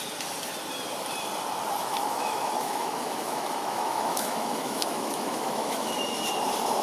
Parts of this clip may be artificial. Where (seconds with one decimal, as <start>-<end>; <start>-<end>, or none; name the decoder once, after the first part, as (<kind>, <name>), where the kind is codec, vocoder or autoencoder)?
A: 1.8-5.9 (autoencoder, DAC-VAE)